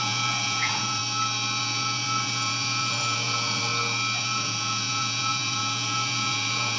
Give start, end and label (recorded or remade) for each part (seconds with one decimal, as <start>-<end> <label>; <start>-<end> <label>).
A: 0.0-1.0 remade; 1.0-1.6 recorded; 1.6-3.7 remade; 3.7-4.2 recorded; 4.2-6.8 remade

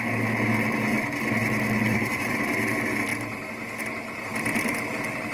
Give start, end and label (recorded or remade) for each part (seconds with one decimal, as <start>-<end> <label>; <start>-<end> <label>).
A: 0.0-1.9 recorded; 1.9-2.4 remade; 2.4-4.3 recorded; 4.3-5.3 remade

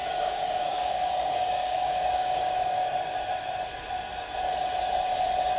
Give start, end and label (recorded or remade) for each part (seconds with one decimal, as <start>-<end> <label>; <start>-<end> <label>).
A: 0.0-2.9 remade; 2.9-5.6 recorded

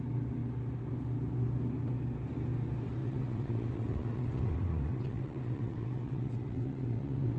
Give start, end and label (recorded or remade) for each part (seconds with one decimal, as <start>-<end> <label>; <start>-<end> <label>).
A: 0.0-3.0 recorded; 3.0-7.4 remade

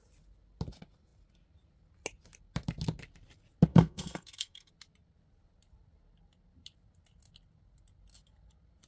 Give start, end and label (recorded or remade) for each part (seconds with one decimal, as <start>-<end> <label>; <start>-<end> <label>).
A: 0.0-3.7 recorded; 3.7-4.7 remade; 4.7-8.9 recorded